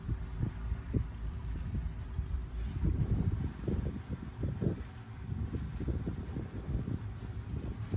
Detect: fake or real fake